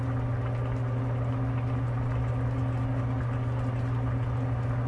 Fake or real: real